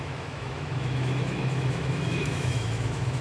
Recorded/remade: remade